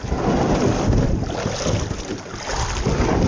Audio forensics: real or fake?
real